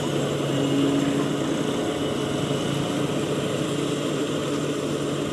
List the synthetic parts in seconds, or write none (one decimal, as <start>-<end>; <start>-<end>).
none